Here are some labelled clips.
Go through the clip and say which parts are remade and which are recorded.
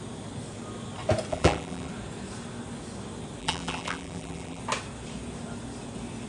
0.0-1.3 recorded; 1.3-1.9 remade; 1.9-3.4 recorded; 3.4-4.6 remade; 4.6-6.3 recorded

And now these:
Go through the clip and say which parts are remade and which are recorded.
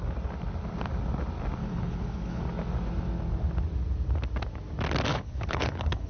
0.0-1.6 recorded; 1.6-2.4 remade; 2.4-5.1 recorded; 5.1-6.1 remade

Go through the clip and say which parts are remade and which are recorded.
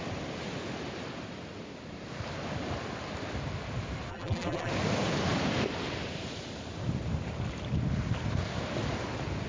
0.0-4.1 recorded; 4.1-4.7 remade; 4.7-9.5 recorded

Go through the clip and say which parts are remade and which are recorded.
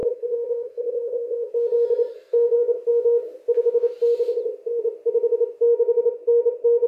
0.0-1.5 remade; 1.5-2.1 recorded; 2.1-2.6 remade; 2.6-6.9 recorded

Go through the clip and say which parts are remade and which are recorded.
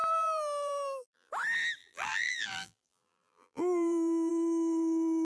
0.0-1.3 remade; 1.3-1.8 recorded; 1.8-4.3 remade; 4.3-5.2 recorded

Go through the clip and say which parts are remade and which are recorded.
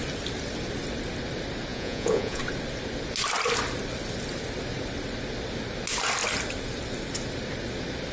0.0-1.7 recorded; 1.7-2.4 remade; 2.4-8.1 recorded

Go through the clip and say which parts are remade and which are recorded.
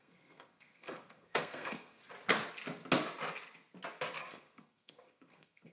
0.0-2.0 remade; 2.0-4.2 recorded; 4.2-5.7 remade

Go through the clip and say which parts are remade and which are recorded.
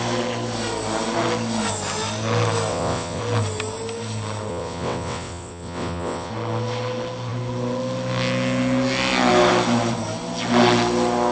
0.0-2.7 recorded; 2.7-3.2 remade; 3.2-4.5 recorded; 4.5-6.3 remade; 6.3-11.3 recorded